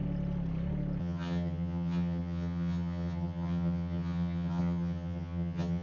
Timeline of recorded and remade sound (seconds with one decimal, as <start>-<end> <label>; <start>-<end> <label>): 0.0-1.0 recorded; 1.0-5.8 remade